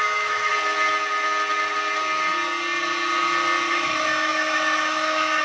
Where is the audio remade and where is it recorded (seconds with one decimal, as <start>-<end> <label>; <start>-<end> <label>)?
0.0-0.5 remade; 0.5-3.7 recorded; 3.7-5.4 remade